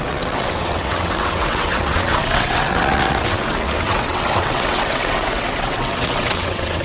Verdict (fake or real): fake